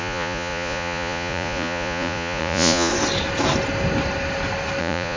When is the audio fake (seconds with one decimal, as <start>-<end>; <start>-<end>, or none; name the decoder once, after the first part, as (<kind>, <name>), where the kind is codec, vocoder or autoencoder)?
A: 0.0-2.9 (vocoder, Vocos); 4.8-5.2